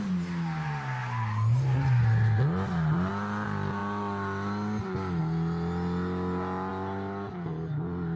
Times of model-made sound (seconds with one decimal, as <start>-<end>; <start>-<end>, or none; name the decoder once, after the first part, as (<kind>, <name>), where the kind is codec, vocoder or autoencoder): none